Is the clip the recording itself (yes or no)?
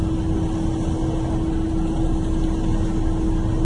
yes